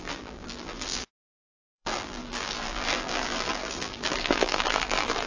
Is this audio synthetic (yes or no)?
yes